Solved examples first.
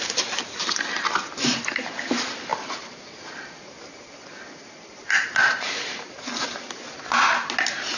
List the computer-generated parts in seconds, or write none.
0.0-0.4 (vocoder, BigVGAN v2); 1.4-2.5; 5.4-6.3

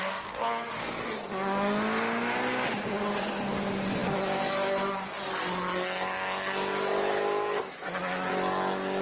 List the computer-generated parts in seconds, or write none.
none